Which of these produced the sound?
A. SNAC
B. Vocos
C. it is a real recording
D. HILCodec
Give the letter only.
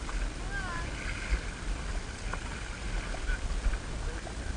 C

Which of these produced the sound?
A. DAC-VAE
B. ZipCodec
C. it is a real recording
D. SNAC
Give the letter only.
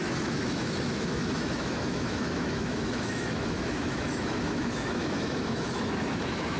A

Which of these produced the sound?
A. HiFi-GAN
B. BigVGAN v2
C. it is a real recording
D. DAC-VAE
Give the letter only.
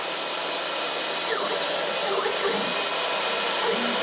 C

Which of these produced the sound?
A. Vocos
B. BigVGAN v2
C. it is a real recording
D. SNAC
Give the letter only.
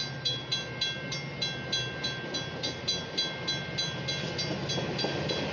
C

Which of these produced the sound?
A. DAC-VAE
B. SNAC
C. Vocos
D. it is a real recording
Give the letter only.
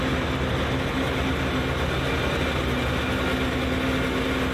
D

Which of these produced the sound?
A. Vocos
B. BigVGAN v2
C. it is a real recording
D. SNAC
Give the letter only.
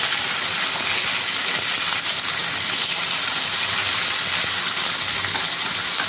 C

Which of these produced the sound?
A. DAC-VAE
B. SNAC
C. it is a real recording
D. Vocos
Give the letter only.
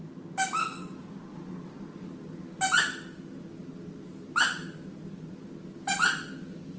C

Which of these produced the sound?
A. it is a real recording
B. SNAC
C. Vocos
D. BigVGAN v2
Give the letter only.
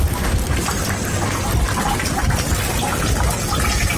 A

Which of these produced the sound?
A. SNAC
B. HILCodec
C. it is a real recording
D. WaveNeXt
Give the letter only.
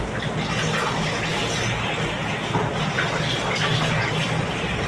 C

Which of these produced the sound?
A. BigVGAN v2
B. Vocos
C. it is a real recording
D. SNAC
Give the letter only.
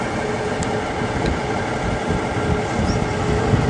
C